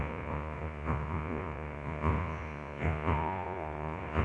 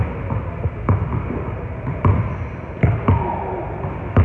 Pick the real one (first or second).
second